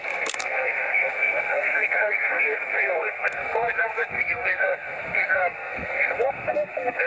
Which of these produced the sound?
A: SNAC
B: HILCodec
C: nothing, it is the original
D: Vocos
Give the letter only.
A